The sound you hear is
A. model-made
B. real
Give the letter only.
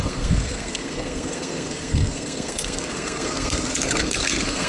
A